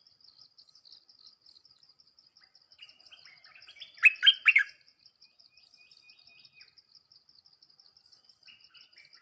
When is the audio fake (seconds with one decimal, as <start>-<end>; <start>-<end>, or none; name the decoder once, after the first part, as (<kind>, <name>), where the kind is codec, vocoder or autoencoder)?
4.3-5.7 (vocoder, BigVGAN v2)